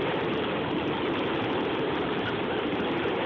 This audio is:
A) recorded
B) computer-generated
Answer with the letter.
B